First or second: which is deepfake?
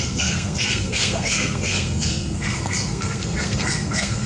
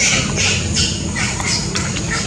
first